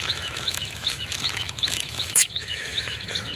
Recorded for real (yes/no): no